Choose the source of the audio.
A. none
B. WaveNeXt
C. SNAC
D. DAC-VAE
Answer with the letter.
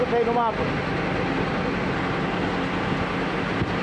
A